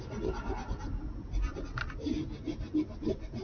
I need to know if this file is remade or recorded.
remade